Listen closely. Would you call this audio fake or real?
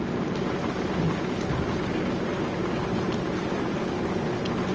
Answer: real